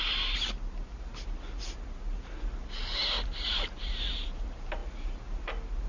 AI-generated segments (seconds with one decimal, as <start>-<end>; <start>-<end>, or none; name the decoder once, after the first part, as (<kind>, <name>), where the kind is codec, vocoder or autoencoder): none